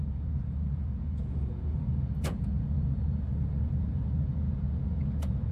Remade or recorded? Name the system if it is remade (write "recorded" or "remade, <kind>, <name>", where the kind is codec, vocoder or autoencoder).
remade, vocoder, Vocos